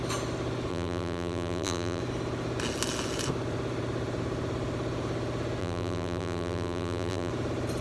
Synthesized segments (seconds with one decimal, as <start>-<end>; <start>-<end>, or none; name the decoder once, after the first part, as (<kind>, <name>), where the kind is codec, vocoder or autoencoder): 0.7-2.0 (vocoder, BigVGAN v2); 5.6-7.3